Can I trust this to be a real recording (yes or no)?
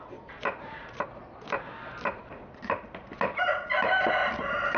yes